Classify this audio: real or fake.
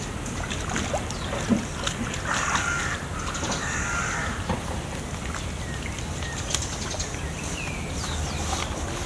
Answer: real